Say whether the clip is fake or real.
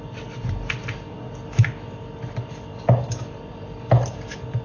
real